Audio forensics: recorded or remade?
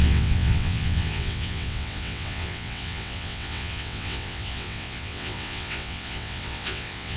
remade